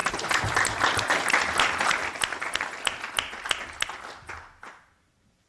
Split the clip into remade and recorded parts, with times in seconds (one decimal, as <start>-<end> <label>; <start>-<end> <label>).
0.0-1.3 remade; 1.3-5.5 recorded